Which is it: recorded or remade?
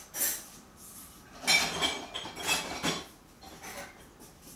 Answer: recorded